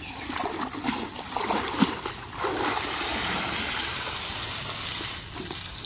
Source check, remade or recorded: recorded